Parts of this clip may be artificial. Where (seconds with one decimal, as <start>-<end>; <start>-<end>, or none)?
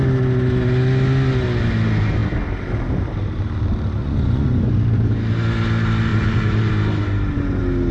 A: 4.0-4.6; 6.1-6.7